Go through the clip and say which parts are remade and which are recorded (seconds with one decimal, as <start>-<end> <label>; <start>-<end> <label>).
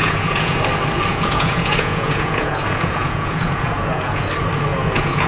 0.0-0.6 remade; 0.6-1.1 recorded; 1.1-4.3 remade; 4.3-4.7 recorded; 4.7-5.3 remade